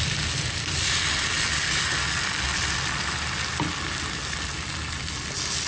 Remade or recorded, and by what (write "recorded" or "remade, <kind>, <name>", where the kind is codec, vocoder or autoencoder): recorded